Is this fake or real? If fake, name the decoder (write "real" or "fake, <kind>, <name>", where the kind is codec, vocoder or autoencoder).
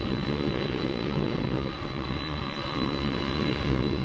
fake, vocoder, WaveNeXt